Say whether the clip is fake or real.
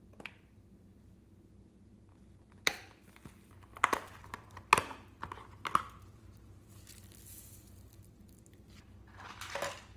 real